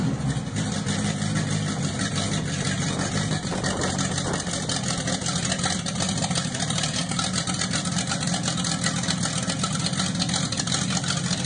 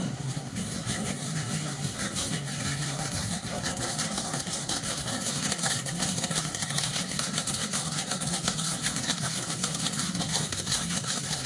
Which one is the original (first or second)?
first